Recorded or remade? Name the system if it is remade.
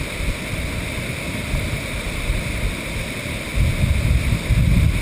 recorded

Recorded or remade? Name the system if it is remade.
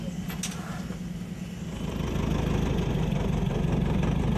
recorded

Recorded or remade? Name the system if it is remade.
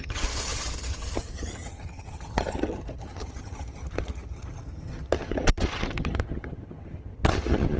remade, vocoder, HiFi-GAN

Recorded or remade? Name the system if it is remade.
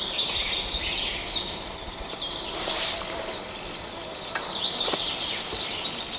recorded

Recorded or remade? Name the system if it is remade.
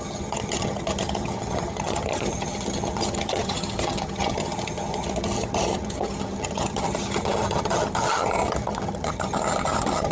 remade, vocoder, HiFi-GAN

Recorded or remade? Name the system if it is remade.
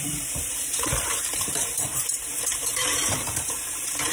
remade, vocoder, BigVGAN v2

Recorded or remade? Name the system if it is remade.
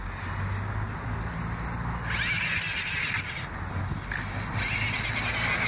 recorded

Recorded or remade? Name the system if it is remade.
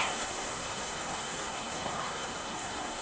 remade, codec, SNAC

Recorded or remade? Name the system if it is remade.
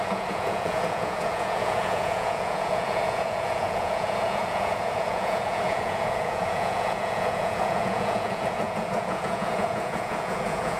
remade, vocoder, Vocos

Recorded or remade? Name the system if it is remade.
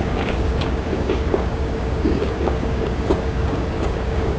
remade, codec, DAC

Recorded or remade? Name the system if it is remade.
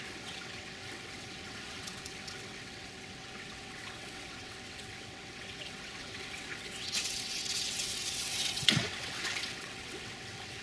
remade, vocoder, WaveNeXt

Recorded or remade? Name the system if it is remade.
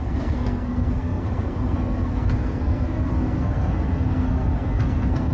remade, codec, SNAC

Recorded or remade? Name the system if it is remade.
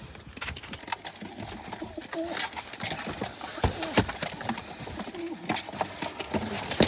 recorded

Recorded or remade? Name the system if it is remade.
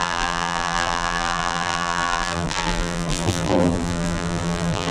remade, vocoder, BigVGAN v2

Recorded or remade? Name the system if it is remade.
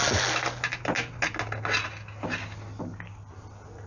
recorded